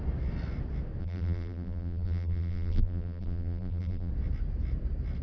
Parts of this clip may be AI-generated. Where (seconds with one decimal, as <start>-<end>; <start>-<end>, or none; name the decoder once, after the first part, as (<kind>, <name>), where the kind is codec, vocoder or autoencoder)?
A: 1.0-4.1 (vocoder, BigVGAN v2)